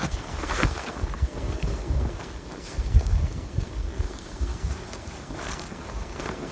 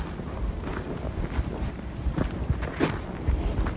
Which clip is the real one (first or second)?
second